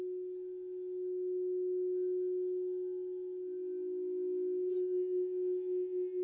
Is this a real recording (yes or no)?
yes